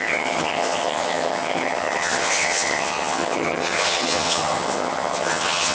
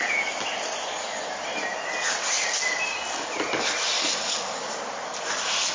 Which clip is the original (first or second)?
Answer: second